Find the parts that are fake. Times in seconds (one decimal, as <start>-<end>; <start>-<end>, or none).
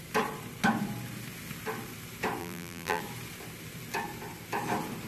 2.4-3.0